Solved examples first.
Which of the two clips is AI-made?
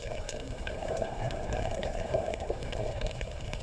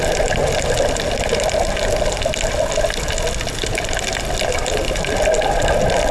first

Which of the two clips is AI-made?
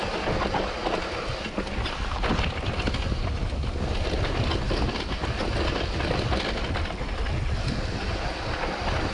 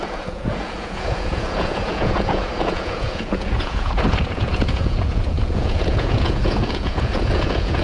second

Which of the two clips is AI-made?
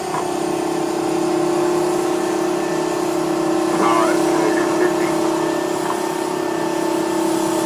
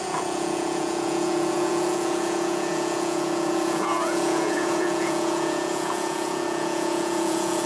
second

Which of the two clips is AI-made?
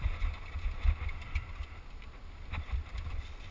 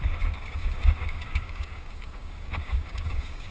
second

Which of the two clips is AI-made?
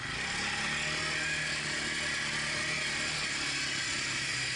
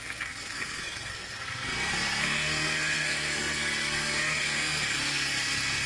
second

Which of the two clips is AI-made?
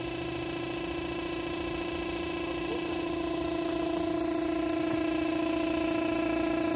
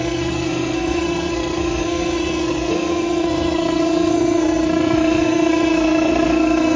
second